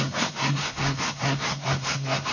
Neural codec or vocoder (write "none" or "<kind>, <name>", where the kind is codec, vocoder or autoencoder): codec, SNAC